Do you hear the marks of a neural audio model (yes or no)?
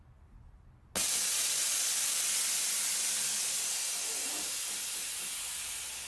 no